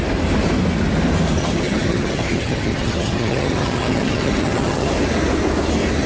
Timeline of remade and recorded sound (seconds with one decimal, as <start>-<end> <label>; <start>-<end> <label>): 0.0-1.4 recorded; 1.4-4.9 remade; 4.9-6.1 recorded